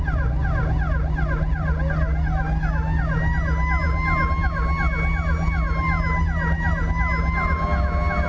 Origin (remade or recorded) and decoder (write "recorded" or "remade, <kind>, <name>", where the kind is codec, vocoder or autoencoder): recorded